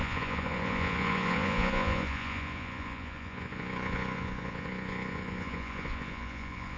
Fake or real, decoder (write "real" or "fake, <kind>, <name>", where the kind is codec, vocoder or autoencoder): fake, vocoder, Vocos